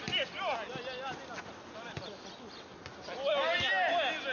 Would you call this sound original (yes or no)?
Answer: yes